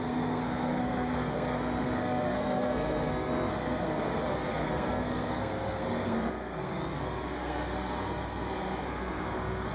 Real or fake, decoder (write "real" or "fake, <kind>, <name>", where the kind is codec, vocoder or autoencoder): fake, codec, SNAC